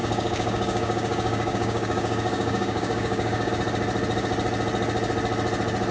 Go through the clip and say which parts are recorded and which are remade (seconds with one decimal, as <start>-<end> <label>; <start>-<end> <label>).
0.0-3.5 remade; 3.5-5.9 recorded